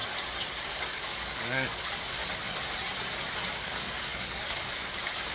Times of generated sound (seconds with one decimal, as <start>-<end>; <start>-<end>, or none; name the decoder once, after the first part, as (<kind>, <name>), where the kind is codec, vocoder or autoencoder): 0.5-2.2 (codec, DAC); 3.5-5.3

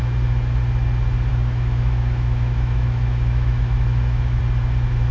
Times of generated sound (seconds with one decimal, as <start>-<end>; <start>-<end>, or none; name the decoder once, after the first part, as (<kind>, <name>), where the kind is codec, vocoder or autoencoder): 1.3-4.4 (autoencoder, DAC-VAE)

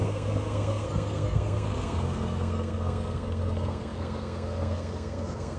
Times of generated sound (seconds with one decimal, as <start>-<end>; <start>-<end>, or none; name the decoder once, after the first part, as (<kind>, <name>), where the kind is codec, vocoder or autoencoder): 0.0-5.6 (codec, SNAC)